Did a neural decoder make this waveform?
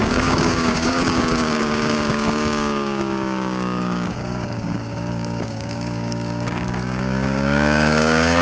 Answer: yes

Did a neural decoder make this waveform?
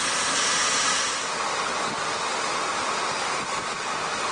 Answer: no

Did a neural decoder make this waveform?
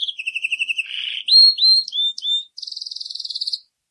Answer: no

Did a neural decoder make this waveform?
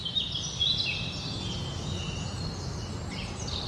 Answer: no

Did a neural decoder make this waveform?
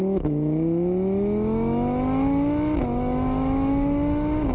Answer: yes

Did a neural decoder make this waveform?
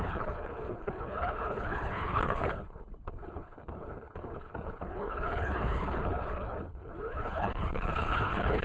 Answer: yes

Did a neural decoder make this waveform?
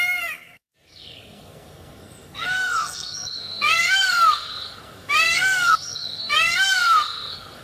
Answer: yes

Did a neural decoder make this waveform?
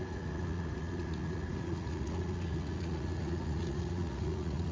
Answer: yes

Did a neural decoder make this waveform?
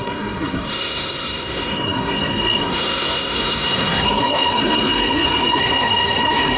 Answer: yes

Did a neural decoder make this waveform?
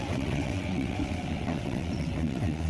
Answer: yes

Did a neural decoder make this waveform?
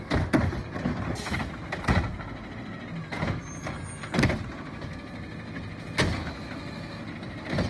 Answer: no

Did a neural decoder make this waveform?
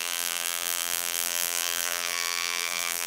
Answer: yes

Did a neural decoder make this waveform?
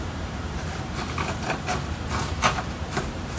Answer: yes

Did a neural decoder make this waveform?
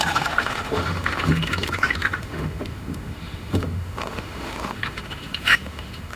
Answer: yes